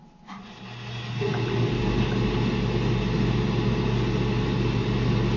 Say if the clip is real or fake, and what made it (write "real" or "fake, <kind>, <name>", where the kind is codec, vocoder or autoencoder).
real